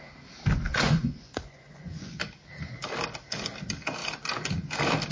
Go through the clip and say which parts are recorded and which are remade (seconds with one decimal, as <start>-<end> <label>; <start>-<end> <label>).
0.0-0.7 recorded; 0.7-2.2 remade; 2.2-5.1 recorded